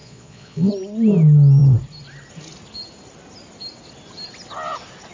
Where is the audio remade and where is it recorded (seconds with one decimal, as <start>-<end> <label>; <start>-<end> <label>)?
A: 0.0-0.7 remade; 0.7-5.1 recorded